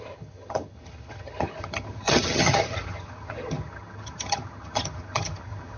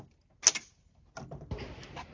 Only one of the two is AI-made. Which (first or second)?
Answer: first